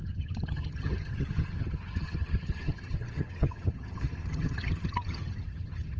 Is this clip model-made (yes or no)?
yes